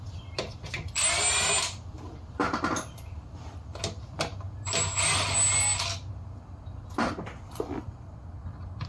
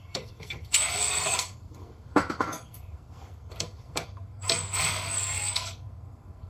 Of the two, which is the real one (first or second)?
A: first